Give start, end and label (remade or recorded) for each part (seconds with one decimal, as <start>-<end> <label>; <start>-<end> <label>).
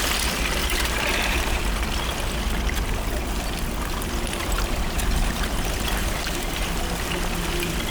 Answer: 0.0-0.6 recorded; 0.6-1.6 remade; 1.6-4.4 recorded; 4.4-6.1 remade; 6.1-7.9 recorded